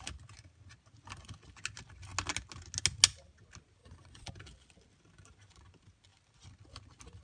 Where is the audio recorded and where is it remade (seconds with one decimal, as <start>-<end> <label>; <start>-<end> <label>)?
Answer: 0.0-3.8 recorded; 3.8-4.3 remade; 4.3-7.2 recorded